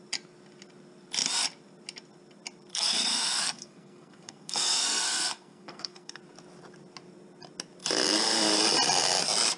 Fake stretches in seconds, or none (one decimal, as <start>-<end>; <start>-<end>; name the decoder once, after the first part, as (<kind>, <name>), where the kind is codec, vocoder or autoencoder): 2.7-6.2 (codec, SNAC)